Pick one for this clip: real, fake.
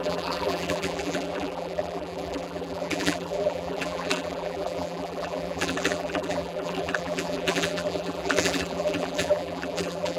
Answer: fake